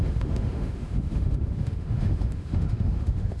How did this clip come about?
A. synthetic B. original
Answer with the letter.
A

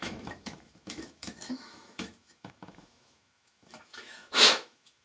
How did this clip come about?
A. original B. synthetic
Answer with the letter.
B